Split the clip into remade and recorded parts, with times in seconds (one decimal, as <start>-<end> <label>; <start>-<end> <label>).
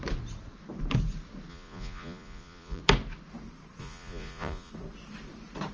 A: 0.0-1.5 recorded; 1.5-2.8 remade; 2.8-3.8 recorded; 3.8-4.7 remade; 4.7-5.7 recorded